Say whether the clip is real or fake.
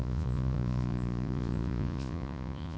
fake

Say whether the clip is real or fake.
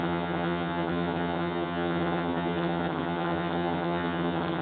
fake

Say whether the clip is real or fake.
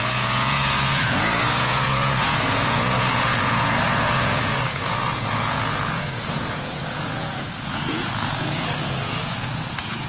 fake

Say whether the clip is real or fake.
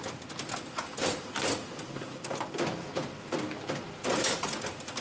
real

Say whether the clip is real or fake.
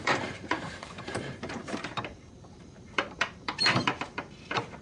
fake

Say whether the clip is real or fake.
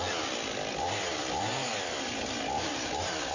real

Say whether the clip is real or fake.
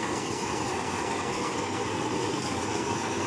fake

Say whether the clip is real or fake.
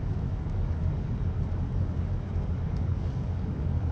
fake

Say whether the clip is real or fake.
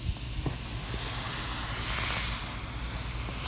real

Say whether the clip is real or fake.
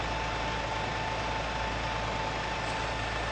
real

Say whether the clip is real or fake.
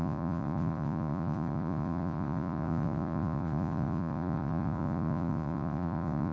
fake